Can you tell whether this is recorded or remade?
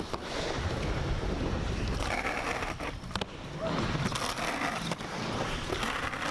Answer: recorded